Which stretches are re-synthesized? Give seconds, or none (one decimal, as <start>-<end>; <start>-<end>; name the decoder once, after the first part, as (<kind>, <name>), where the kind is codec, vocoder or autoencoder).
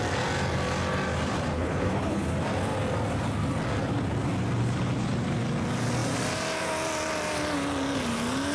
1.5-2.3 (codec, HILCodec)